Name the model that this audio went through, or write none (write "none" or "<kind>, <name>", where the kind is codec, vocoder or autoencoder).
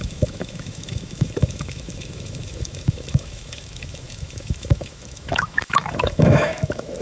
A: autoencoder, DAC-VAE